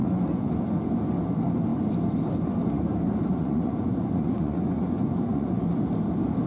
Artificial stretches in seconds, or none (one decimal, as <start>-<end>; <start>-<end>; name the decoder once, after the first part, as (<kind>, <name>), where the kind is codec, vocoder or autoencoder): 0.0-0.5 (vocoder, Vocos); 3.3-5.6

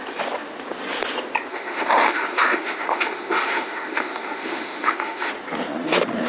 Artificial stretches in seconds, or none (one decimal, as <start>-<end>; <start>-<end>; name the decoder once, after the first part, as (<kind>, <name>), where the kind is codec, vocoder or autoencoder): 1.5-5.3 (autoencoder, DAC-VAE)